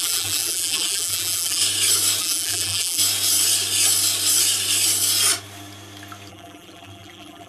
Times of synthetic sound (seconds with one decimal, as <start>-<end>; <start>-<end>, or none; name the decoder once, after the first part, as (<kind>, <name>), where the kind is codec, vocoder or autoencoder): 0.0-1.6 (vocoder, BigVGAN v2); 2.2-3.0; 6.3-7.5